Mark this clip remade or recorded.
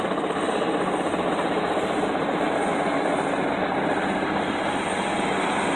recorded